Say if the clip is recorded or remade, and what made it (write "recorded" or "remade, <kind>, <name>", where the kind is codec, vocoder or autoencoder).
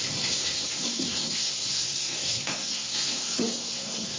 remade, codec, SNAC